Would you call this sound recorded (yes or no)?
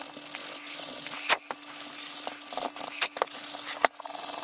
yes